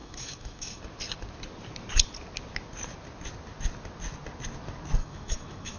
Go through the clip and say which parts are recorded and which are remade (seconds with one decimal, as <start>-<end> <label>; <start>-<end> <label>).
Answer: 0.0-0.8 remade; 0.8-5.0 recorded; 5.0-5.8 remade